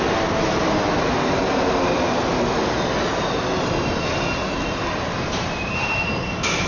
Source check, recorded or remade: recorded